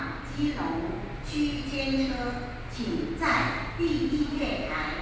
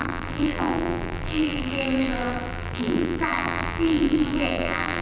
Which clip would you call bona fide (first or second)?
first